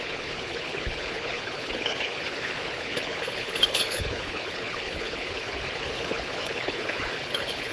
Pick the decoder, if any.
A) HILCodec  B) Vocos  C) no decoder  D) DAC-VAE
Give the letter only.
A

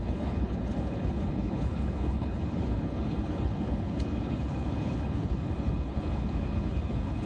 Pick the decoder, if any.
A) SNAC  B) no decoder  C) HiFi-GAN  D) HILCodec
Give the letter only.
D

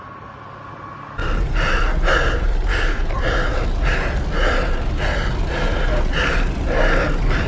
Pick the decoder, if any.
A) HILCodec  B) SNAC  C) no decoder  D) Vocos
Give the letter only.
C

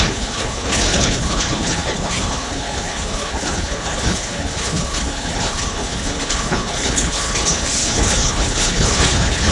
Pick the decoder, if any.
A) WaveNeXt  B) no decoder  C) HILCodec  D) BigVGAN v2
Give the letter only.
C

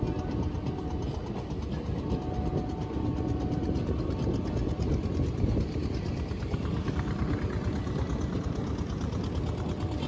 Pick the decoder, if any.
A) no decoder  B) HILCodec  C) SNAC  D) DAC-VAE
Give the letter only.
A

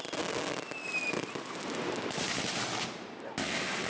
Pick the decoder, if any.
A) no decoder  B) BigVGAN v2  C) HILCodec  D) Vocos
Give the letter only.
A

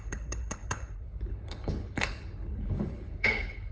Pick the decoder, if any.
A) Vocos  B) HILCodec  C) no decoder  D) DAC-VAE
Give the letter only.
B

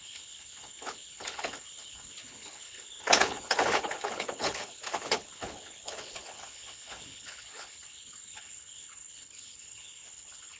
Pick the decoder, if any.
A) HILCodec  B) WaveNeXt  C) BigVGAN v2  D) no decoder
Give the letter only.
A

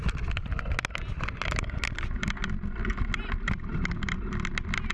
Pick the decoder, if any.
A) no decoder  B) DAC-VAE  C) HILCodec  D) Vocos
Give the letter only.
A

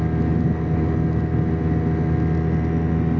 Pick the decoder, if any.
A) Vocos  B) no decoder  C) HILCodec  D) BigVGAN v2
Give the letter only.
B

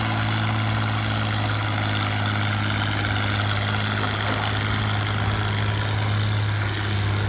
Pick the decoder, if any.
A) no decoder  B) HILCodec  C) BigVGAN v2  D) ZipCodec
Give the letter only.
A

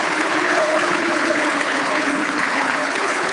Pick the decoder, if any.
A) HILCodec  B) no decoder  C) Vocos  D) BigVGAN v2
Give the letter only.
A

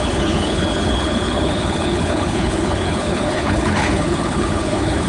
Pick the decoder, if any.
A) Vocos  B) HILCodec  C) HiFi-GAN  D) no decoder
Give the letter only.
B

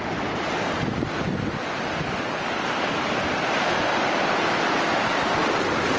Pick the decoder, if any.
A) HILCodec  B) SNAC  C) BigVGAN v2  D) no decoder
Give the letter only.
D